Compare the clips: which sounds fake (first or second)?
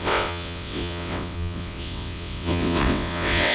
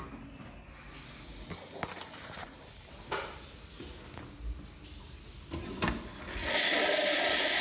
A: first